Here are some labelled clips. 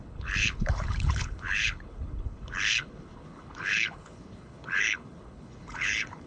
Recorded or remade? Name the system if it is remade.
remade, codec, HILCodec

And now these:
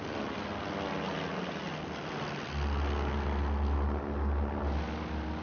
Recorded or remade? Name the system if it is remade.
recorded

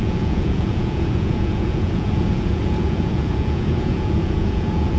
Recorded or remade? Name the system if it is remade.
remade, vocoder, Vocos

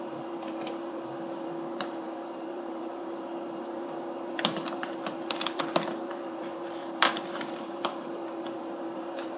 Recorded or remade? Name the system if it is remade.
remade, vocoder, BigVGAN v2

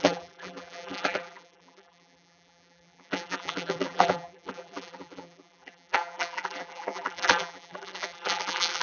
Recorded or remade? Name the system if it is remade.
remade, vocoder, BigVGAN v2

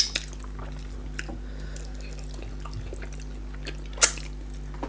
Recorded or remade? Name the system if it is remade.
recorded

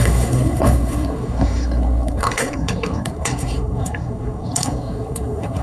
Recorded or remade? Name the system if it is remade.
remade, codec, SNAC